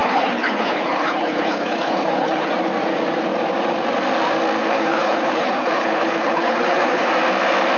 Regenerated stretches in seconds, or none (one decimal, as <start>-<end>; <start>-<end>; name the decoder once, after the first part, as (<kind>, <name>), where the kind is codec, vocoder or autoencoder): 0.0-2.5 (codec, HILCodec); 4.6-7.1